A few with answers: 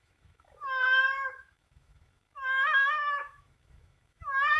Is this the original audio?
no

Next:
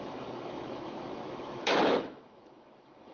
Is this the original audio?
no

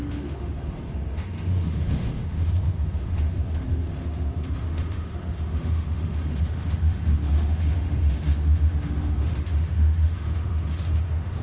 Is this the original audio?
no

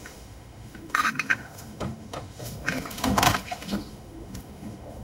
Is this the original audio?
no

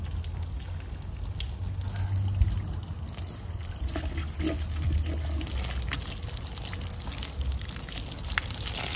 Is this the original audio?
yes